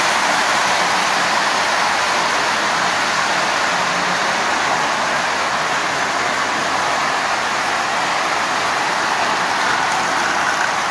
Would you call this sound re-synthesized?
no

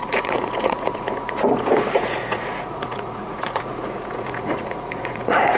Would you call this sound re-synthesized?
yes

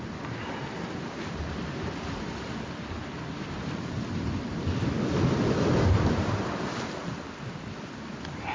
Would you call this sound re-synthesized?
no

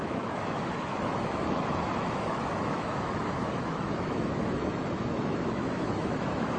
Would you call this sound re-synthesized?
yes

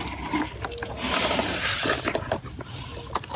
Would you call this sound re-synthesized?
no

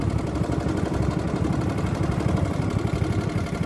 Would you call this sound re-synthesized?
no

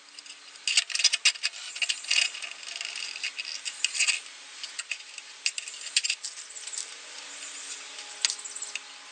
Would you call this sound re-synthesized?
no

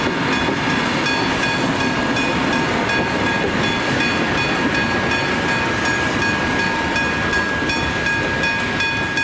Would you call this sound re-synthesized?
no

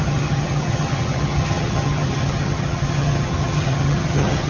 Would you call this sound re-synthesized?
yes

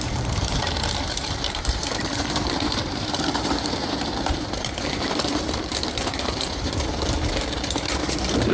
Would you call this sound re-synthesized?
yes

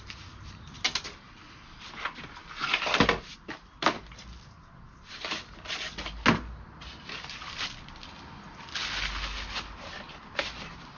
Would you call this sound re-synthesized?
no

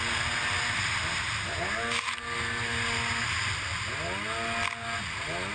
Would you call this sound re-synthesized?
no